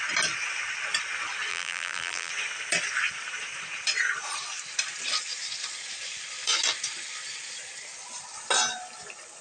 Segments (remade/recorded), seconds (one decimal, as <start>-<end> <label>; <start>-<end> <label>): 0.0-1.5 recorded; 1.5-2.3 remade; 2.3-9.4 recorded